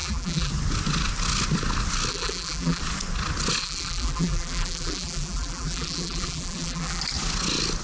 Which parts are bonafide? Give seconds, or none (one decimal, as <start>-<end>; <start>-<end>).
0.5-2.1; 2.8-3.6; 7.0-7.8